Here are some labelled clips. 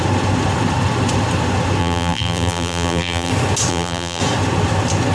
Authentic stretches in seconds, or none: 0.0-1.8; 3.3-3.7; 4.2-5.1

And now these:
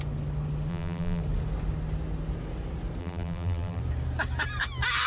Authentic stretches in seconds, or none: 0.0-0.7; 1.2-3.0; 3.8-5.1

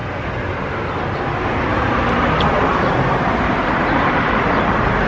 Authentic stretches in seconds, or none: 0.0-2.8

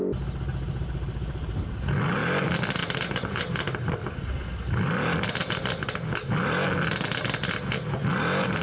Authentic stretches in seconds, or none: 0.0-0.5; 1.9-2.8; 3.6-8.6

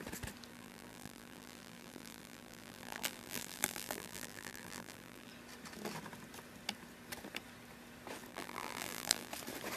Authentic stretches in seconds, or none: 0.0-0.5; 5.3-8.3; 9.3-9.8

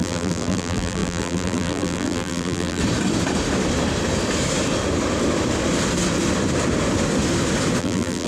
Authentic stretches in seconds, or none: 2.8-7.8

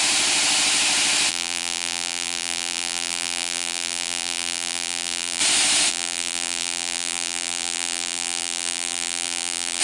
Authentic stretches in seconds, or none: 0.0-1.3; 5.4-5.9